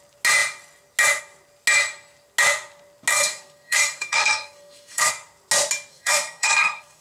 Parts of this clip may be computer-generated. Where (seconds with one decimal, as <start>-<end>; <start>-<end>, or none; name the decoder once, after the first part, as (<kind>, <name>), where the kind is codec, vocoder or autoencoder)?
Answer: 3.1-5.1 (codec, SNAC); 5.9-7.0